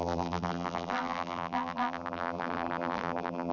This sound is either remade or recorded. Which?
remade